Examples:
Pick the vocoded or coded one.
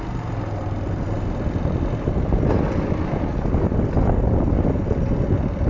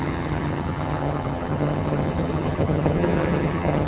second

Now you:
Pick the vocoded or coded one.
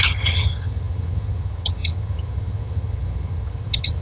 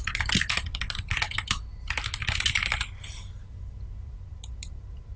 first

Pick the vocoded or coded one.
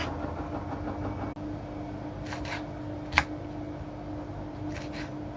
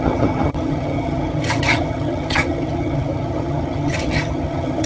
second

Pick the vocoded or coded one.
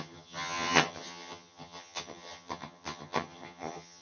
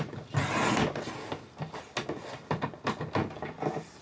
first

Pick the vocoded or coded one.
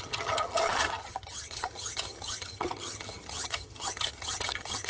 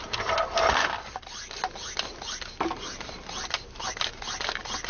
first